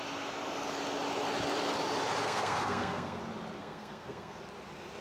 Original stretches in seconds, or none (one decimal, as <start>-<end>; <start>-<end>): 0.0-2.2; 3.2-3.6; 4.4-5.0